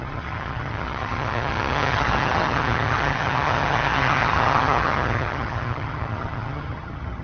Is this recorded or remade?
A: remade